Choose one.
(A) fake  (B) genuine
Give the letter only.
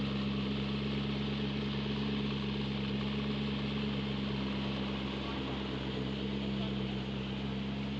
B